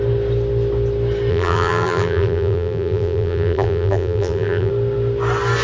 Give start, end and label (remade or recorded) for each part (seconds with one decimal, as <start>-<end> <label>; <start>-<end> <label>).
0.0-1.3 recorded; 1.3-4.7 remade; 4.7-5.6 recorded